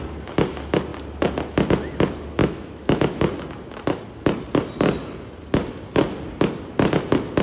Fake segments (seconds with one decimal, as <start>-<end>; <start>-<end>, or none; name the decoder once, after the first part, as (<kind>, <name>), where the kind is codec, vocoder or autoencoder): 2.4-3.2 (autoencoder, DAC-VAE)